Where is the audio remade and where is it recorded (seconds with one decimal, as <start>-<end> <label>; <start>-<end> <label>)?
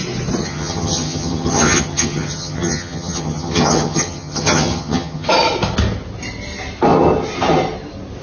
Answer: 0.0-0.4 recorded; 0.4-5.3 remade; 5.3-8.2 recorded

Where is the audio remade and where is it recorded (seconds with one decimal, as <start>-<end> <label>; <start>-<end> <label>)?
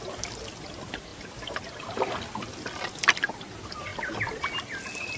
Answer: 0.0-5.2 recorded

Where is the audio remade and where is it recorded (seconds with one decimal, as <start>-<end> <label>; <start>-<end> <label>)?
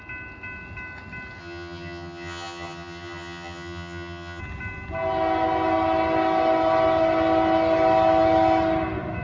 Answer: 0.0-1.4 recorded; 1.4-4.4 remade; 4.4-9.2 recorded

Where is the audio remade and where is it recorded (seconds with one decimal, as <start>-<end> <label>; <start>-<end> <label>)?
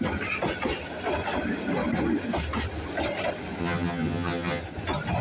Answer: 0.0-3.6 recorded; 3.6-4.6 remade; 4.6-5.2 recorded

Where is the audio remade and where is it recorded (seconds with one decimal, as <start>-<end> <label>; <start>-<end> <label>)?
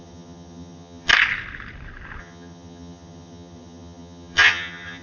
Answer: 0.0-1.1 remade; 1.1-2.2 recorded; 2.2-5.0 remade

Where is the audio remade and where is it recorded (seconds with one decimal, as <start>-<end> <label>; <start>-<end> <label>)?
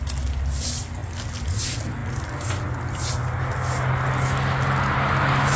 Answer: 0.0-5.6 recorded